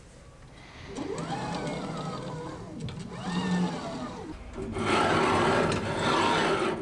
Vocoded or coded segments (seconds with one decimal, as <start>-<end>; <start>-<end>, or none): none